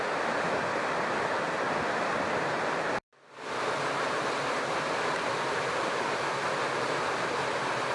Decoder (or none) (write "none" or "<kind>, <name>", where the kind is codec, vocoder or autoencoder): vocoder, BigVGAN v2